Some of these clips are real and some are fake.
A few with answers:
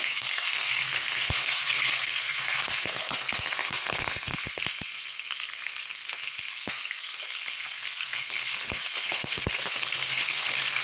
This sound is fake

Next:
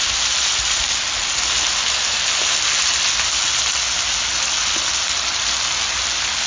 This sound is real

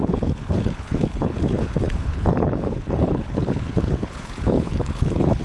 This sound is fake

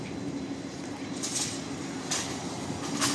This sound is real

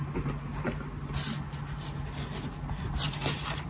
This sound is real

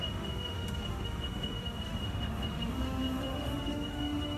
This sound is fake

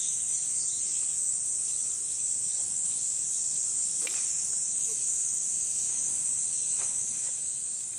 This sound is fake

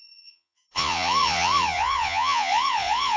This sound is fake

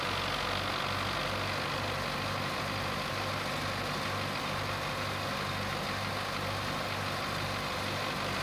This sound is real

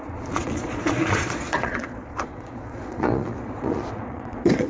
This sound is fake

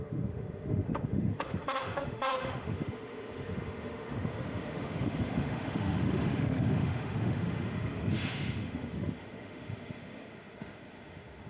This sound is fake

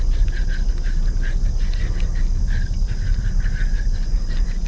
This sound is real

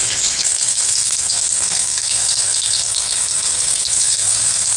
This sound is fake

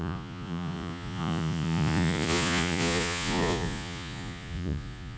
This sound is fake